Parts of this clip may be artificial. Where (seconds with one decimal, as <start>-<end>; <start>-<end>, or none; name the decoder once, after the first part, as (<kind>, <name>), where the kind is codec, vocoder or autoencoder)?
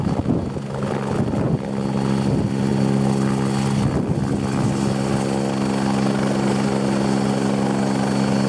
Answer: none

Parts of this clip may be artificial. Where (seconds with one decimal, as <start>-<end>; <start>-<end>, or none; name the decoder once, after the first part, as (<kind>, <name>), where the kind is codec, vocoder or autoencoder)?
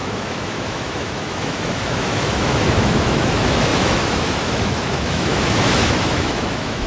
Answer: 0.0-6.9 (autoencoder, DAC-VAE)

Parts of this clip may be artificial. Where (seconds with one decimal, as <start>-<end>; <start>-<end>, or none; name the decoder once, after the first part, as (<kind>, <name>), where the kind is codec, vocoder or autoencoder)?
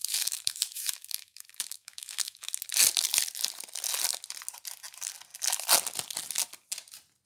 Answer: 0.0-2.5 (autoencoder, DAC-VAE)